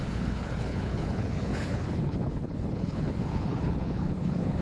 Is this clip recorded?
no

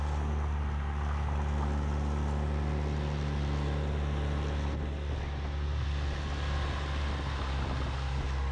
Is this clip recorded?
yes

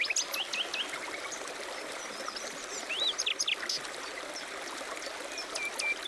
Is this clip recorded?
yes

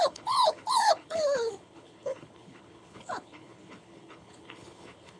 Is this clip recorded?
no